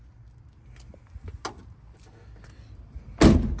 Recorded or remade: recorded